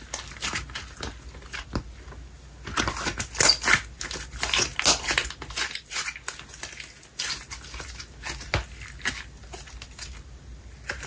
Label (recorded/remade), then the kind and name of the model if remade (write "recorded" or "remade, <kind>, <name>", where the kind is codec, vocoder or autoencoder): recorded